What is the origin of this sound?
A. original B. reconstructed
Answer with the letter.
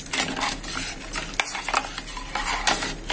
A